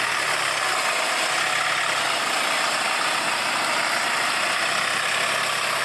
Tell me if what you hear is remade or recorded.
recorded